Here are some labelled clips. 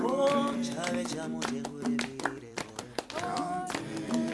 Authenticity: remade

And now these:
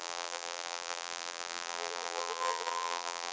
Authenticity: remade